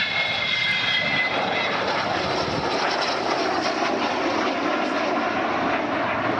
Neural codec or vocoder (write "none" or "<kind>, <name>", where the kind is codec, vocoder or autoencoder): none